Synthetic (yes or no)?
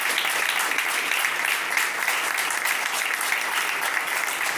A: no